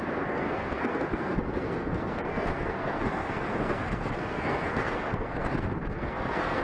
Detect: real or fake fake